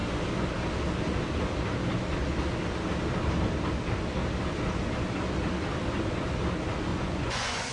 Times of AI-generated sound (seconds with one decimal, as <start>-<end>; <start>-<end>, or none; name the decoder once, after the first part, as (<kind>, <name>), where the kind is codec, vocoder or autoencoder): 6.9-7.7 (vocoder, Vocos)